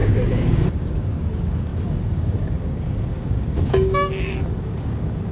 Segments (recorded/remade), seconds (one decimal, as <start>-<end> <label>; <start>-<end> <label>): 0.0-5.3 remade